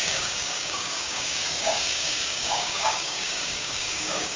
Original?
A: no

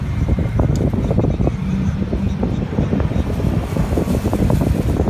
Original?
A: yes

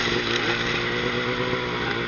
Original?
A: yes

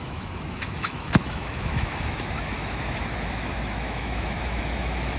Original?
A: no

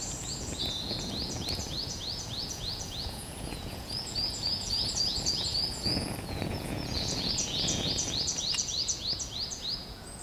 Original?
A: no